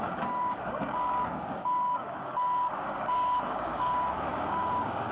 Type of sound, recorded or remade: remade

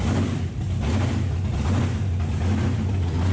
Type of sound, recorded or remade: recorded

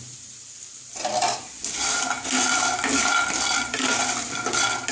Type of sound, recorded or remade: recorded